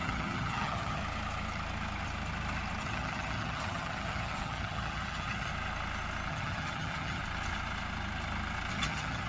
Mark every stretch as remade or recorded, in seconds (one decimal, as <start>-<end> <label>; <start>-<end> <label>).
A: 0.0-1.0 remade; 1.0-2.8 recorded; 2.8-5.5 remade; 5.5-6.3 recorded; 6.3-7.2 remade; 7.2-8.7 recorded; 8.7-9.3 remade